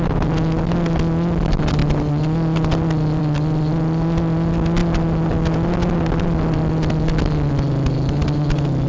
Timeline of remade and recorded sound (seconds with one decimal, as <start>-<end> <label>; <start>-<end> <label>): 0.0-8.9 recorded